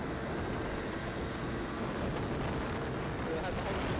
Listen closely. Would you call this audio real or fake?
real